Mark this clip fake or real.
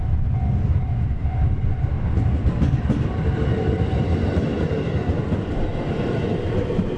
real